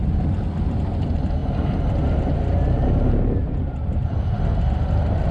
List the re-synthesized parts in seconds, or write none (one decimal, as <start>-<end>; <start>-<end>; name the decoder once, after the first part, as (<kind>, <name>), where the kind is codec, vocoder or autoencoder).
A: none